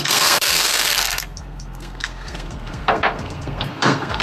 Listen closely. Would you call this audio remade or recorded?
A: remade